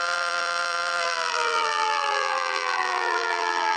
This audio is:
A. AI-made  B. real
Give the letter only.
A